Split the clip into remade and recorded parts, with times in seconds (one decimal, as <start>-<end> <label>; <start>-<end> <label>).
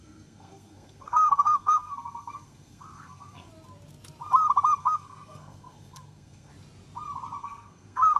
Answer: 0.0-3.5 remade; 3.5-4.8 recorded; 4.8-6.5 remade; 6.5-7.4 recorded; 7.4-8.2 remade